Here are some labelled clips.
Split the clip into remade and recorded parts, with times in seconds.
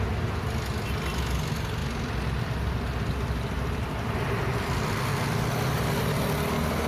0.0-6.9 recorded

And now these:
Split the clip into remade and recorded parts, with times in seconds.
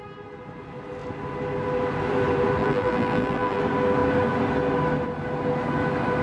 0.0-2.6 recorded; 2.6-3.6 remade; 3.6-6.2 recorded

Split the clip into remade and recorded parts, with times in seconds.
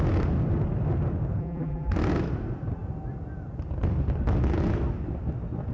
0.0-1.4 recorded; 1.4-1.9 remade; 1.9-5.7 recorded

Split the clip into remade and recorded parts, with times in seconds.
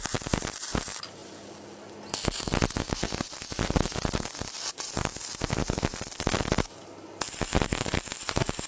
0.0-8.7 recorded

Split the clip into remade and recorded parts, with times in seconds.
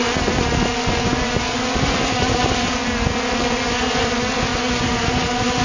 0.0-5.6 recorded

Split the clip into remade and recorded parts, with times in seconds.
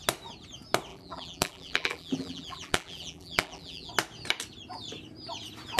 0.0-0.9 recorded; 0.9-3.9 remade; 3.9-5.8 recorded